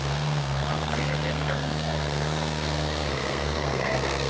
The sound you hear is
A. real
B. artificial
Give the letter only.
B